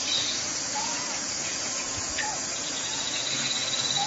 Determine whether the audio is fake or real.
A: fake